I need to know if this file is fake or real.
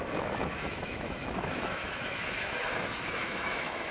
fake